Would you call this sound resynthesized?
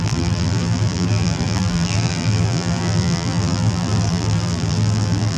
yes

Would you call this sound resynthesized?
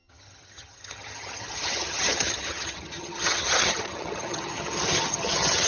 yes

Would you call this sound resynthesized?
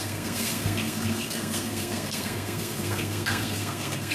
yes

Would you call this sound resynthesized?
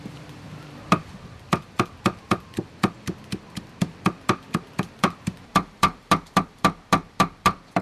yes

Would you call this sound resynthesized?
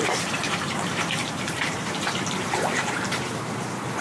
yes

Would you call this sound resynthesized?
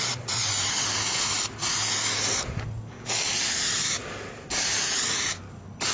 no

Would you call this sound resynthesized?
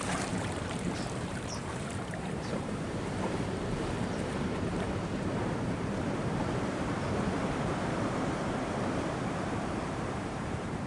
yes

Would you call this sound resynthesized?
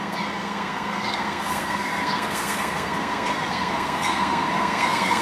yes